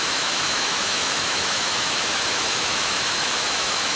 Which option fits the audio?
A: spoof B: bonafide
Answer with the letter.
A